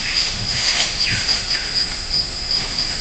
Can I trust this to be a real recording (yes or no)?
no